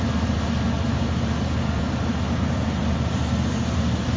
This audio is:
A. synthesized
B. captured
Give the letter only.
B